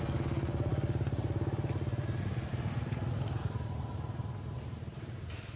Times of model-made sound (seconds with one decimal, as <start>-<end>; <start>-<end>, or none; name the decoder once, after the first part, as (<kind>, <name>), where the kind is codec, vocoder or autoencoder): none